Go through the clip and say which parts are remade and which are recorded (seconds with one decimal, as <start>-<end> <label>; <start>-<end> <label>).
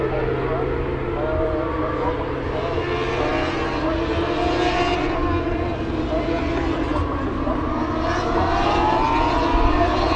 0.0-10.2 recorded